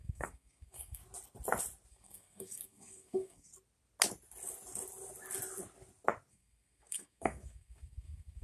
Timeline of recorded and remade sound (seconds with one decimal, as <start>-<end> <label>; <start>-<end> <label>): 0.0-1.0 remade; 1.0-1.9 recorded; 1.9-3.5 remade; 3.5-6.3 recorded; 6.3-8.4 remade